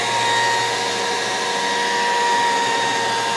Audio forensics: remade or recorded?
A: recorded